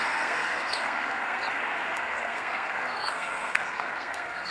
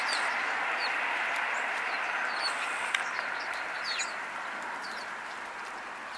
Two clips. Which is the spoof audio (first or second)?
first